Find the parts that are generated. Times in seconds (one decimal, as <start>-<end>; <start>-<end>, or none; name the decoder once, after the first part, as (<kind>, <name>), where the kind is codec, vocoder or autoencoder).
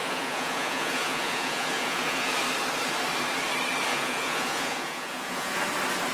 0.0-2.3 (vocoder, Vocos); 3.9-5.6